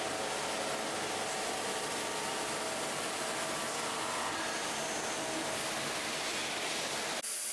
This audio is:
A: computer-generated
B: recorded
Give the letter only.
B